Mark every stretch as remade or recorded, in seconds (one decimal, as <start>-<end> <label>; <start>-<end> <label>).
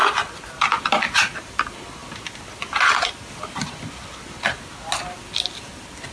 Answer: 0.0-6.1 recorded